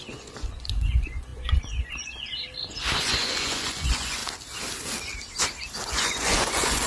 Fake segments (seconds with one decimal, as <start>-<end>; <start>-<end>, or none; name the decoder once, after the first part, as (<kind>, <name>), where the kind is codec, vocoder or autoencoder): 0.0-2.3 (vocoder, Vocos); 3.0-4.2; 5.9-6.9